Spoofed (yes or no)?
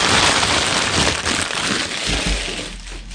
no